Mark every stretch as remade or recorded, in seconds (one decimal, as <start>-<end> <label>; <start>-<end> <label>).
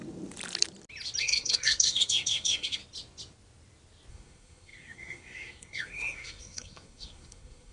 0.0-1.2 recorded; 1.2-2.8 remade; 2.8-4.1 recorded; 4.1-7.7 remade